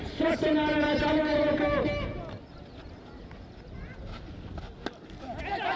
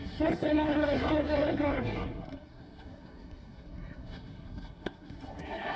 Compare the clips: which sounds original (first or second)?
first